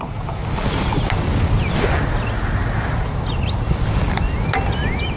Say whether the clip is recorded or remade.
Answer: recorded